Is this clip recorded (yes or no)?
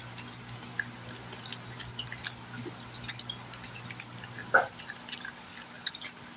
yes